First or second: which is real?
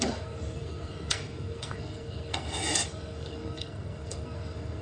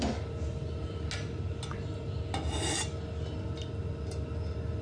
second